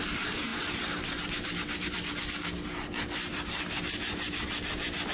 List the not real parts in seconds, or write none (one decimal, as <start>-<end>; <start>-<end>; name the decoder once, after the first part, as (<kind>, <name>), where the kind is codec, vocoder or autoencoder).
none